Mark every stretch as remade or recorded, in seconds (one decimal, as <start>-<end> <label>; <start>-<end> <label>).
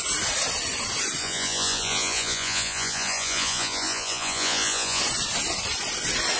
0.0-1.2 recorded; 1.2-5.0 remade; 5.0-6.4 recorded